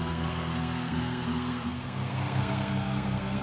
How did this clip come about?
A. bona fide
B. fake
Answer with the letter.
B